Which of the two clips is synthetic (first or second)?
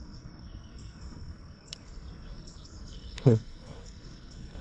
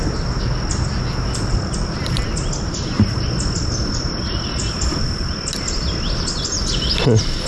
first